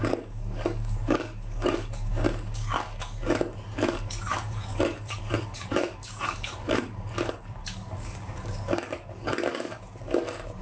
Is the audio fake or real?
fake